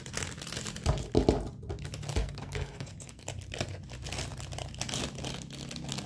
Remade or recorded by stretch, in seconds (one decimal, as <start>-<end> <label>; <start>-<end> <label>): 0.0-2.2 recorded; 2.2-3.2 remade; 3.2-6.1 recorded

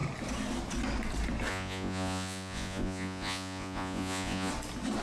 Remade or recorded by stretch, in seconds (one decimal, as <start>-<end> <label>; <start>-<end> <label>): 0.0-1.5 recorded; 1.5-4.5 remade; 4.5-5.0 recorded

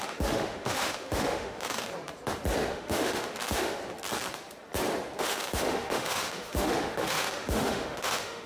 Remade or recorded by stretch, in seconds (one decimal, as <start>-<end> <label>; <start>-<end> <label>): 0.0-1.9 remade; 1.9-2.7 recorded; 2.7-3.8 remade; 3.8-5.2 recorded; 5.2-8.5 remade

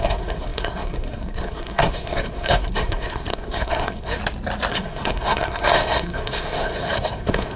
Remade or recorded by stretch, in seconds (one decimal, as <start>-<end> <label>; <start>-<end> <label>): 0.0-4.2 remade; 4.2-4.7 recorded; 4.7-7.6 remade

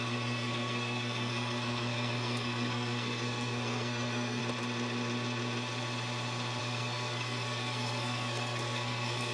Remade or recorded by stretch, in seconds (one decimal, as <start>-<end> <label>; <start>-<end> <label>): 0.0-4.4 remade; 4.4-6.6 recorded; 6.6-9.3 remade

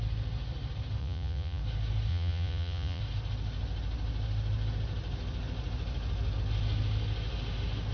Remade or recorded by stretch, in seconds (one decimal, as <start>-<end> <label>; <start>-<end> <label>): 0.0-1.0 recorded; 1.0-1.6 remade; 1.6-2.1 recorded; 2.1-3.0 remade; 3.0-7.9 recorded